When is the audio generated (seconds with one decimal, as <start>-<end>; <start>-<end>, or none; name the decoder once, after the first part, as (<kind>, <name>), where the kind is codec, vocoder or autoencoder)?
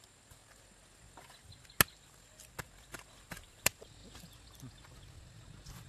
none